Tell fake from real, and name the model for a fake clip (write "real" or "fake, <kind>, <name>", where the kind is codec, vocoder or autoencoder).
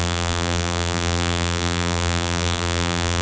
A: fake, vocoder, BigVGAN v2